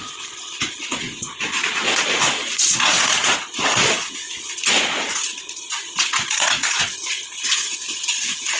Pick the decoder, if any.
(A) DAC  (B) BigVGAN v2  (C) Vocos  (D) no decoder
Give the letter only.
C